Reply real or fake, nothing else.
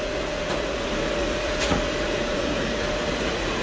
fake